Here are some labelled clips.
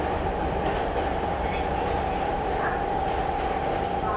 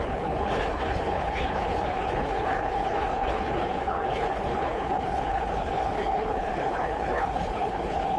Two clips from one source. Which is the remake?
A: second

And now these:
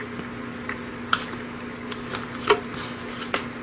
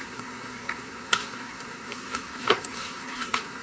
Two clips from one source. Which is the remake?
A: second